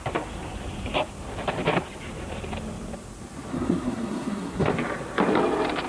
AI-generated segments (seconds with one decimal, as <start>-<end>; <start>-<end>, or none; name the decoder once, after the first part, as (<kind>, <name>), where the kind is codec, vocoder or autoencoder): 3.5-4.7 (codec, SNAC)